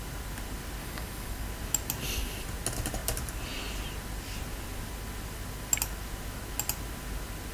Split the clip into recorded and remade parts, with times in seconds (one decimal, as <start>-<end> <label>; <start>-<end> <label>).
0.0-0.8 recorded; 0.8-1.5 remade; 1.5-7.5 recorded